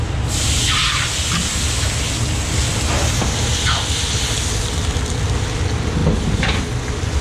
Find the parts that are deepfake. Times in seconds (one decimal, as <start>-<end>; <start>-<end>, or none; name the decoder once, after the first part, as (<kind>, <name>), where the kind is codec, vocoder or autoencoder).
none

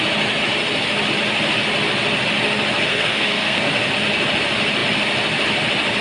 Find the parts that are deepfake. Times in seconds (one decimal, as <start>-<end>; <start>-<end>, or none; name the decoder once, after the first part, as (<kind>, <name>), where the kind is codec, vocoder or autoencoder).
2.9-3.7 (codec, SNAC)

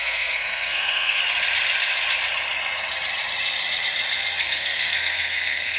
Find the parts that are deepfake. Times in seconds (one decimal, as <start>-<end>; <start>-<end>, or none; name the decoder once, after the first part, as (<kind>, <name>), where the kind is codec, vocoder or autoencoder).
0.0-1.2 (codec, SNAC); 4.4-5.8

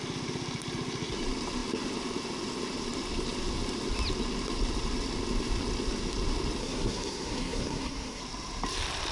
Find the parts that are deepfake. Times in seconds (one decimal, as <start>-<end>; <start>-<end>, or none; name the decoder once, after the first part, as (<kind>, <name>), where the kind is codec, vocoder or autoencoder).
6.6-8.2 (codec, SNAC)

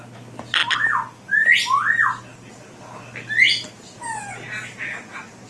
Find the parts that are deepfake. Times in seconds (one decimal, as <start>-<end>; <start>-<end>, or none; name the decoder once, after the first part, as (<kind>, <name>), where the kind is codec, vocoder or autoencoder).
none